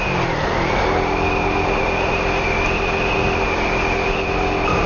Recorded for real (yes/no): yes